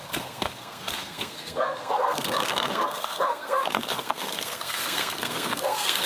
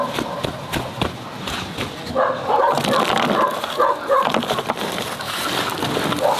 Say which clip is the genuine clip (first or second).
second